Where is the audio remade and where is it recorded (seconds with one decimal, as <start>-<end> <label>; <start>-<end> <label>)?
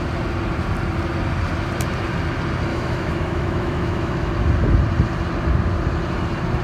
0.0-2.7 recorded; 2.7-4.3 remade; 4.3-6.6 recorded